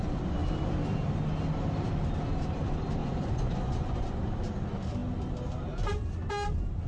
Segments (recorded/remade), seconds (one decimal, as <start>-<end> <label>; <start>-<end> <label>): 0.0-3.0 recorded; 3.0-4.2 remade; 4.2-6.9 recorded